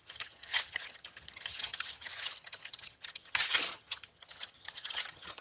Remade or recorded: remade